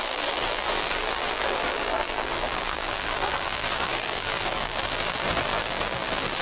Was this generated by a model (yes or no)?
yes